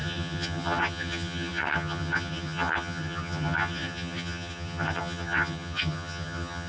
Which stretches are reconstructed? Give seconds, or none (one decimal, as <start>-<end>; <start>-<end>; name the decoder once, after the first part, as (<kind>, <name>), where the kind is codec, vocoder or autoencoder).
0.0-6.7 (vocoder, HiFi-GAN)